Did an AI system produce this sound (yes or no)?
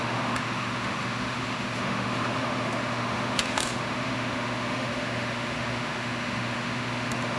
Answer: yes